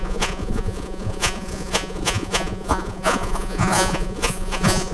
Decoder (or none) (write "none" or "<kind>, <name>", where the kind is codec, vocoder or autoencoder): vocoder, Vocos